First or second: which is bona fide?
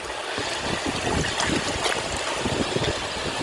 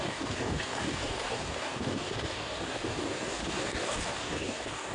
first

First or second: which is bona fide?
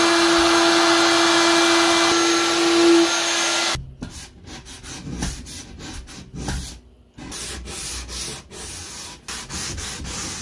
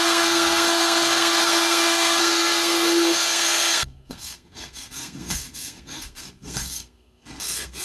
first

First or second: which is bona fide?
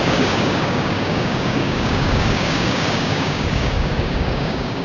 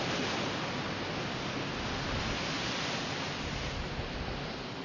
second